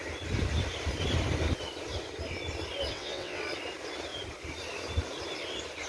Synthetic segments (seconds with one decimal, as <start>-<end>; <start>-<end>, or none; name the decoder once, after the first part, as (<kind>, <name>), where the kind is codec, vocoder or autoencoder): 2.9-3.4 (vocoder, WaveNeXt)